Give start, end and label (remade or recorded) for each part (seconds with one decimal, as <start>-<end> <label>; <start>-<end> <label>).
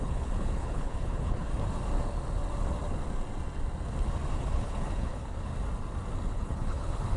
0.0-1.5 remade; 1.5-4.3 recorded; 4.3-5.5 remade; 5.5-6.3 recorded; 6.3-7.2 remade